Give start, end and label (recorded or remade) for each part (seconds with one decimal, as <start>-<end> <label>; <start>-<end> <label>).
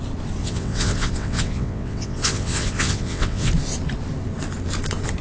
0.0-0.4 recorded; 0.4-3.5 remade; 3.5-5.2 recorded